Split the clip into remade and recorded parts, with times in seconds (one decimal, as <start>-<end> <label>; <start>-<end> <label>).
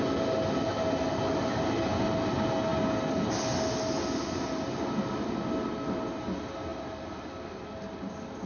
0.0-8.5 recorded